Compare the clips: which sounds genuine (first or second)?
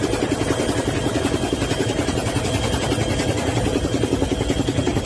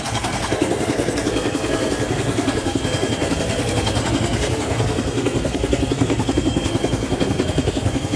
first